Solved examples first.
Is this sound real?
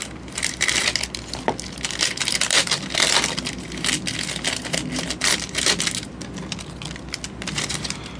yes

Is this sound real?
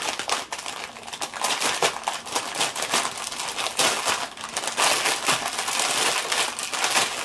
yes